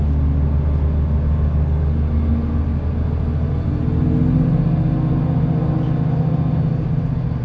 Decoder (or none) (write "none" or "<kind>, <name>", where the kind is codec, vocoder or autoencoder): none